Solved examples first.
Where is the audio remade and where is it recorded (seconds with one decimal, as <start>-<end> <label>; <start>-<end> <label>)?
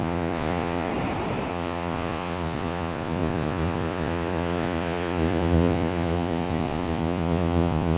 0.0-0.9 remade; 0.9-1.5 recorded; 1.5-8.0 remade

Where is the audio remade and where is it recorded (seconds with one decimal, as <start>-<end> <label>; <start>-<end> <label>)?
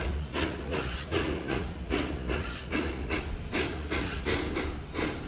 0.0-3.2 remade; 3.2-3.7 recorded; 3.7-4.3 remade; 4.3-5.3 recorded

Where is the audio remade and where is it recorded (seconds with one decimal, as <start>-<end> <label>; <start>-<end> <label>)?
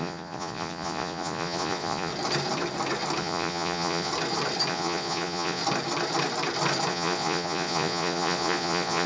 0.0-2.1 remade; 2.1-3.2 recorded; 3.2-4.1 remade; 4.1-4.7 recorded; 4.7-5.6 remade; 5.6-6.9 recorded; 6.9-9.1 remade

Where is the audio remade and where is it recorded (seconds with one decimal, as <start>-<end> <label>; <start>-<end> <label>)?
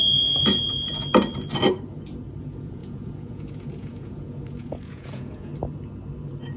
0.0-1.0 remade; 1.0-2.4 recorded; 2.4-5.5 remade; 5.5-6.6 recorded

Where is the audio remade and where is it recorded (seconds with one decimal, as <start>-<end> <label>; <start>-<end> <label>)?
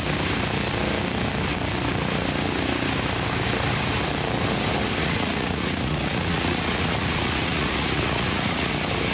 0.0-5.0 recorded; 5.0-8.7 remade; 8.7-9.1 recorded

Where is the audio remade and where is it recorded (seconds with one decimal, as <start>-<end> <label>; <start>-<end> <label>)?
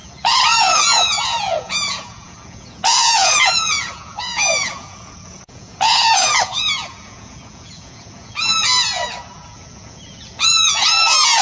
0.0-11.4 remade